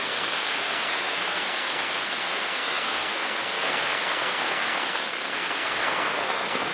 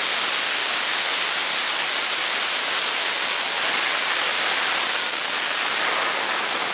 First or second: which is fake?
first